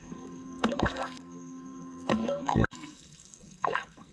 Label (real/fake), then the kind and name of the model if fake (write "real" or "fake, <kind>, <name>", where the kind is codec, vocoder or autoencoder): fake, codec, SNAC